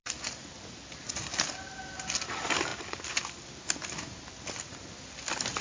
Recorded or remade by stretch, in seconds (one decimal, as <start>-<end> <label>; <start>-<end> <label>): 0.0-5.6 recorded